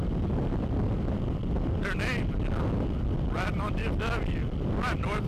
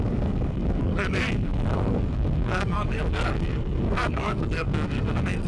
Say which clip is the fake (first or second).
second